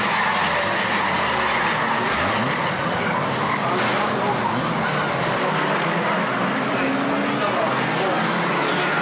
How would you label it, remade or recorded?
recorded